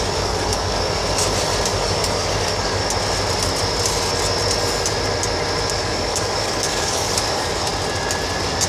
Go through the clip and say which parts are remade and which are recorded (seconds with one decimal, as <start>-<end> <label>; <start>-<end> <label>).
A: 0.0-1.0 remade; 1.0-1.7 recorded; 1.7-2.8 remade; 2.8-5.7 recorded; 5.7-7.7 remade; 7.7-8.7 recorded